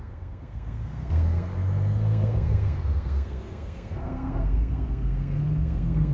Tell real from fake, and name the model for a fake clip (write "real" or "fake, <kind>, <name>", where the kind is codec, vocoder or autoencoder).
fake, codec, SNAC